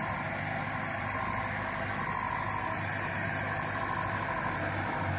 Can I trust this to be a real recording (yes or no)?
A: yes